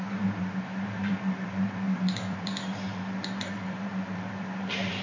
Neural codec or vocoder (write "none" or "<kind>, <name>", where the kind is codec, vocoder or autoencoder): vocoder, BigVGAN v2